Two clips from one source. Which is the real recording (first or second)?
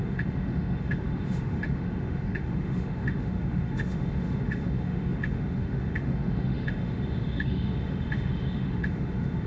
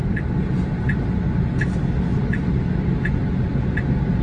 second